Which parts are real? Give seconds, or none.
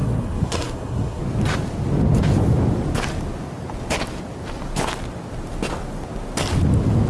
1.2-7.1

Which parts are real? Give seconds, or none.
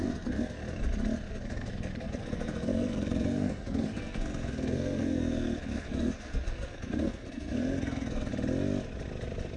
0.6-1.3; 8.3-9.6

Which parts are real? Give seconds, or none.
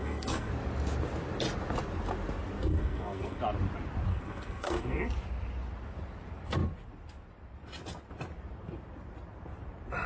0.5-2.7; 3.4-4.1; 5.1-10.1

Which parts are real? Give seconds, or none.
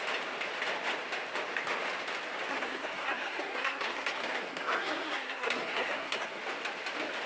0.0-2.5; 6.4-7.3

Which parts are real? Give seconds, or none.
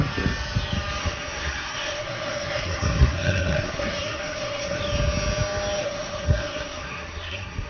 0.0-1.0; 4.8-5.8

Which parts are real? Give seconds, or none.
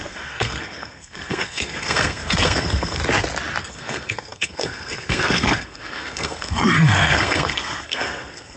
3.0-3.6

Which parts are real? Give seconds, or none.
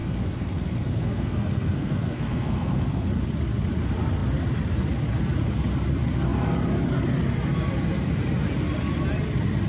3.1-9.7